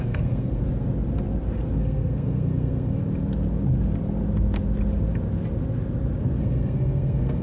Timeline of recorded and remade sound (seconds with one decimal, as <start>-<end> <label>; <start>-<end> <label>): 0.0-0.6 remade; 0.6-1.8 recorded; 1.8-3.0 remade; 3.0-6.4 recorded; 6.4-7.4 remade